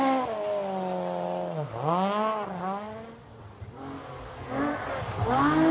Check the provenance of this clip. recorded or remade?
recorded